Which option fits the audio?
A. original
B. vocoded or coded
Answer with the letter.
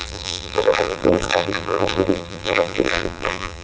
B